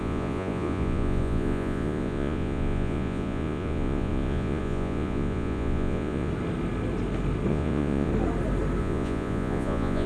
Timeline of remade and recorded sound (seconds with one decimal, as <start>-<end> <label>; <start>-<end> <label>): 0.0-6.3 remade; 6.3-7.5 recorded; 7.5-8.1 remade; 8.1-8.8 recorded; 8.8-10.1 remade